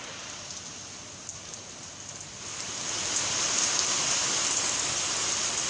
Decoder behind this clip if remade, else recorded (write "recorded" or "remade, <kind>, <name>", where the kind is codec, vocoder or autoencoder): recorded